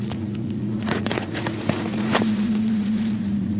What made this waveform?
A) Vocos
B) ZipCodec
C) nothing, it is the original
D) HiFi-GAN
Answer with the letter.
A